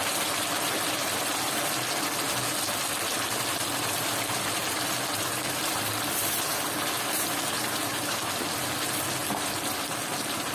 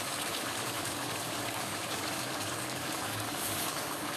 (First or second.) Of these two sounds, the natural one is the first